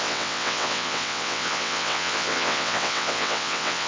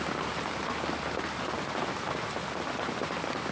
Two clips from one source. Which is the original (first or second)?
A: second